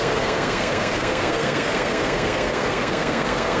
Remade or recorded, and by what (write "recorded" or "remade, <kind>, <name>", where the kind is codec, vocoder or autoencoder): remade, codec, SNAC